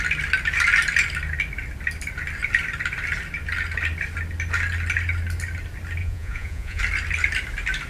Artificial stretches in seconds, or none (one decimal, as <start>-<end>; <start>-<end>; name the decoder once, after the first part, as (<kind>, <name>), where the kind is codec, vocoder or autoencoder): 6.0-6.8 (vocoder, Vocos)